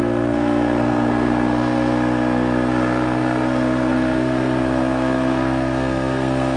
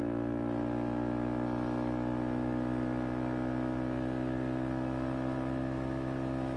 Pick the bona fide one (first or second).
second